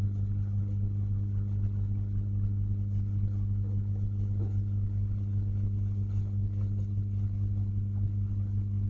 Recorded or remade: remade